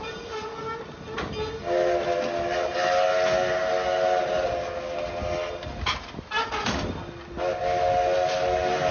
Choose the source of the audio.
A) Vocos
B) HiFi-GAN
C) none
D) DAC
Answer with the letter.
C